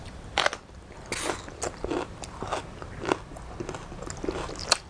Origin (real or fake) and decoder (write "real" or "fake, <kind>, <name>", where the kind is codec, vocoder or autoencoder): real